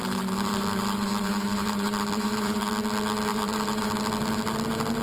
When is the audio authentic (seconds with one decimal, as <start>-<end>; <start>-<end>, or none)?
2.7-3.3; 4.1-5.0